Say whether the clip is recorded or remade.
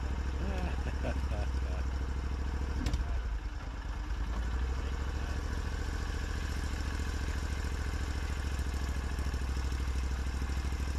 recorded